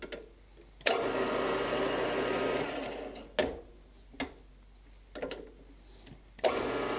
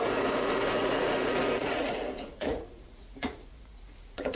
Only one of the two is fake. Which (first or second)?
second